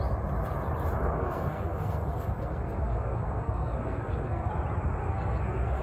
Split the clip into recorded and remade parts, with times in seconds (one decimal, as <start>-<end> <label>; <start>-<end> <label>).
0.0-1.0 recorded; 1.0-4.5 remade; 4.5-5.0 recorded; 5.0-5.8 remade